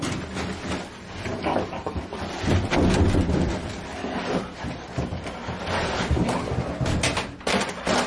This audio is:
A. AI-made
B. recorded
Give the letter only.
A